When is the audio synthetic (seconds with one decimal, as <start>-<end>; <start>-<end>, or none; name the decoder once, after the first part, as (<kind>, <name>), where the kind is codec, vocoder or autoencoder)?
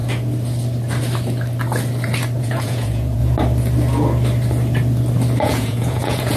2.4-3.2 (vocoder, Vocos); 5.4-6.4